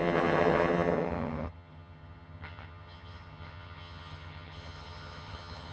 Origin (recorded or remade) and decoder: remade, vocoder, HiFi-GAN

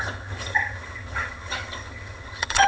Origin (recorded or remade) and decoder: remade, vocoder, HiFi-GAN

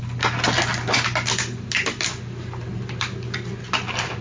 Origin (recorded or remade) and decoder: recorded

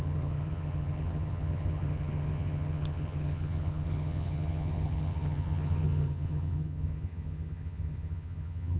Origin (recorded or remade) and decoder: remade, vocoder, HiFi-GAN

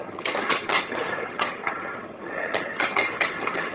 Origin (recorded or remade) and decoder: remade, vocoder, HiFi-GAN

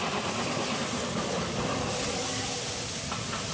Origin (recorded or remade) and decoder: recorded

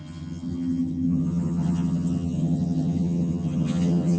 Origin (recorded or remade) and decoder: remade, vocoder, HiFi-GAN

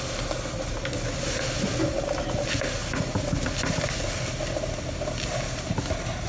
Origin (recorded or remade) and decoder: recorded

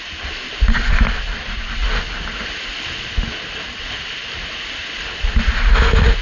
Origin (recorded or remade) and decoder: recorded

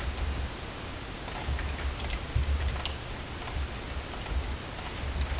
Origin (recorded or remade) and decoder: recorded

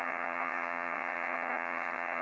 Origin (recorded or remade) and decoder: remade, vocoder, HiFi-GAN